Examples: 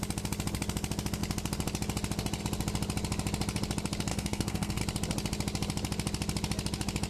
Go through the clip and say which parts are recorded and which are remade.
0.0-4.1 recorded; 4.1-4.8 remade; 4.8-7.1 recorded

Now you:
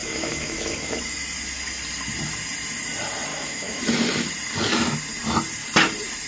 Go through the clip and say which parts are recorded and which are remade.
0.0-1.0 remade; 1.0-3.3 recorded; 3.3-3.8 remade; 3.8-6.3 recorded

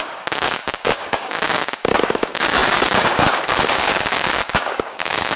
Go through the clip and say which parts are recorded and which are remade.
0.0-5.4 remade

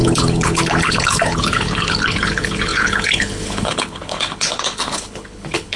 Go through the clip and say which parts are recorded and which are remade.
0.0-5.8 remade

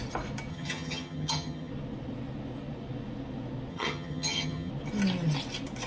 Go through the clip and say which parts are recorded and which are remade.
0.0-0.5 recorded; 0.5-1.7 remade; 1.7-3.7 recorded; 3.7-4.7 remade; 4.7-5.9 recorded

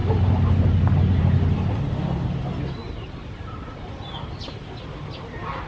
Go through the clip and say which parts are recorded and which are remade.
0.0-2.8 recorded; 2.8-3.9 remade; 3.9-5.7 recorded

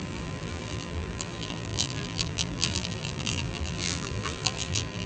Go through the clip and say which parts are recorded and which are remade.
0.0-5.1 remade

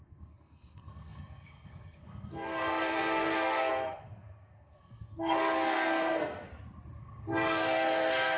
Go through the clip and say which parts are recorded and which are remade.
0.0-6.5 remade; 6.5-7.0 recorded; 7.0-8.4 remade